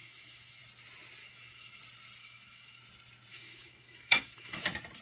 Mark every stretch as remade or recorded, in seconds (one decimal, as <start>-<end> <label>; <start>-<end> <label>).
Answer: 0.0-0.6 remade; 0.6-1.2 recorded; 1.2-1.8 remade; 1.8-2.2 recorded; 2.2-2.8 remade; 2.8-3.3 recorded; 3.3-4.6 remade; 4.6-5.0 recorded